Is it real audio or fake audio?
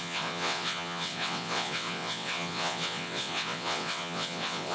fake